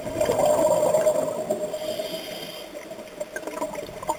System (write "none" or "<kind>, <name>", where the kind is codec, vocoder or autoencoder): vocoder, BigVGAN v2